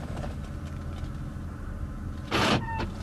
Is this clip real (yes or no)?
yes